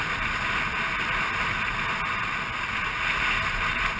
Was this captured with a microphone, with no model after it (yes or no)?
yes